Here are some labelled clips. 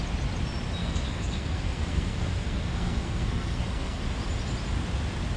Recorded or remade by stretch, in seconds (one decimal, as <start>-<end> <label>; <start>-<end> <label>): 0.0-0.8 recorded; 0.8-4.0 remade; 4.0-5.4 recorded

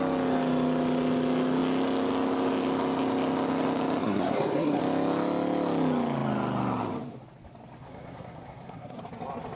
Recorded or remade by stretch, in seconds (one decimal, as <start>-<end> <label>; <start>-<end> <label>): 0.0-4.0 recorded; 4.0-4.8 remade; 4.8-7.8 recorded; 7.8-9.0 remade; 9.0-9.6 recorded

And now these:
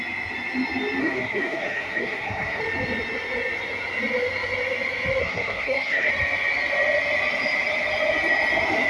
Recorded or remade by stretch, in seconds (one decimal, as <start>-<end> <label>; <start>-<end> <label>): 0.0-1.0 recorded; 1.0-2.6 remade; 2.6-5.2 recorded; 5.2-6.1 remade; 6.1-8.9 recorded